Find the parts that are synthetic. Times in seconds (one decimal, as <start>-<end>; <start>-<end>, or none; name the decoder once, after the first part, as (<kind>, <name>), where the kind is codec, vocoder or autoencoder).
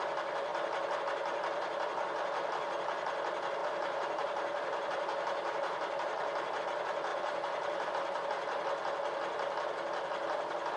3.6-6.6 (vocoder, BigVGAN v2); 7.1-7.9